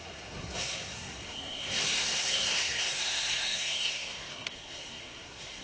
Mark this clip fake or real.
fake